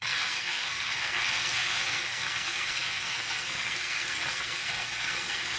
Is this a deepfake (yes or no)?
yes